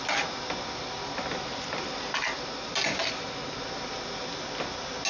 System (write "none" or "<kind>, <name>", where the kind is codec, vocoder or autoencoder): none